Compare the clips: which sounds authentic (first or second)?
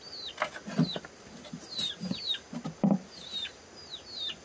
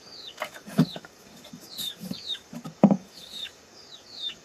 first